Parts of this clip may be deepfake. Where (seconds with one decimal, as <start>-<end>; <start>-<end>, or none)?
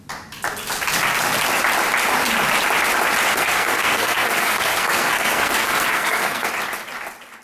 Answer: 3.3-6.5